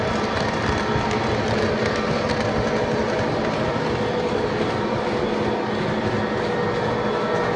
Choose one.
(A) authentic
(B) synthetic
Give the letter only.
A